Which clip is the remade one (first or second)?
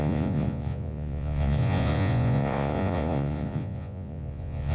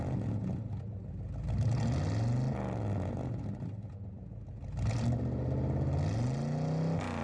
first